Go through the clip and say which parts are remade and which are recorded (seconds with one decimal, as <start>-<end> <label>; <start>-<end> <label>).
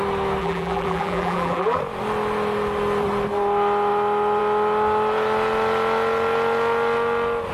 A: 0.0-0.4 recorded; 0.4-1.8 remade; 1.8-7.5 recorded